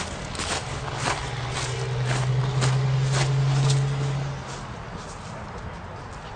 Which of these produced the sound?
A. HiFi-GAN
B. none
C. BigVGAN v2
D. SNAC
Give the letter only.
B